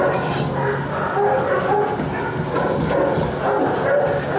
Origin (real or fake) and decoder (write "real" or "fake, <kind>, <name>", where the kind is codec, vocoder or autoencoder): real